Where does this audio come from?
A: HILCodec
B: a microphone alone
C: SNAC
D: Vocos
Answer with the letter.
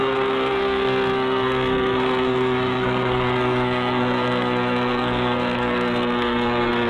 C